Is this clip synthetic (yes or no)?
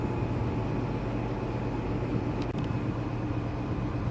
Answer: no